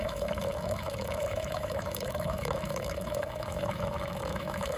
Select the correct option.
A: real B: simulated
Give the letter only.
B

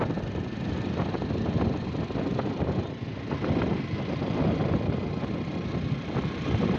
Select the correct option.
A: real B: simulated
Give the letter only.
A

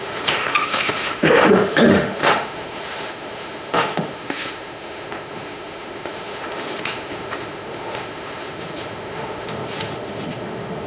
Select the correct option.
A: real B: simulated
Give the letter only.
B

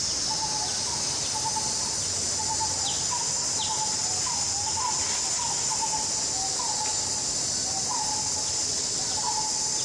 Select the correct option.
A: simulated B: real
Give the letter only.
B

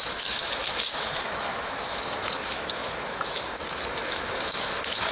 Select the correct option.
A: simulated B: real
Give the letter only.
A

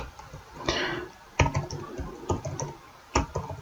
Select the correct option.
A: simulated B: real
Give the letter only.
B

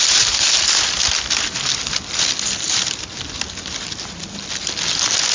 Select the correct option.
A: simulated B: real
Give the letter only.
B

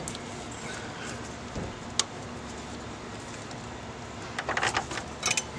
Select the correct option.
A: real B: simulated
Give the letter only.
A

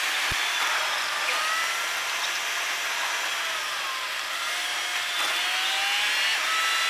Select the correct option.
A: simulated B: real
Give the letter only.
B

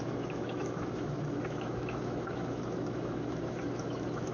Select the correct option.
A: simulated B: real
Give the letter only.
A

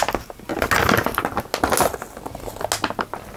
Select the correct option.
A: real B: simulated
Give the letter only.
A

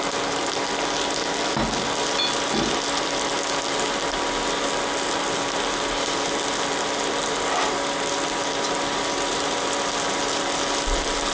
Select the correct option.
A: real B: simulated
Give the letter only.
A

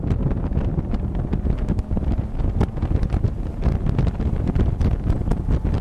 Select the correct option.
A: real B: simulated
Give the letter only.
A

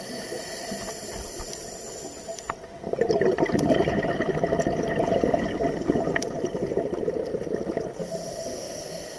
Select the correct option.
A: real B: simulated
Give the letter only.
A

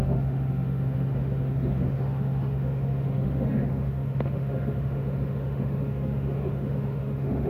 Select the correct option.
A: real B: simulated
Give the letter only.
B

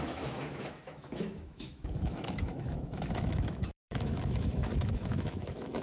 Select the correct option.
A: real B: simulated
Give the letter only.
B